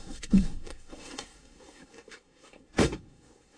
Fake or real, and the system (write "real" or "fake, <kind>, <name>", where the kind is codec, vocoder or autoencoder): fake, codec, SNAC